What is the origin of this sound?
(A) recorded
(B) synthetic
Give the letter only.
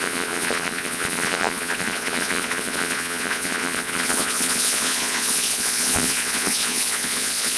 B